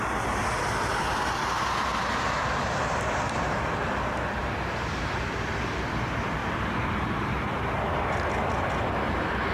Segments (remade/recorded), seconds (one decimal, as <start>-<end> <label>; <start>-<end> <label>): 0.0-1.9 recorded; 1.9-3.6 remade; 3.6-4.4 recorded; 4.4-5.2 remade; 5.2-6.4 recorded; 6.4-8.2 remade; 8.2-9.5 recorded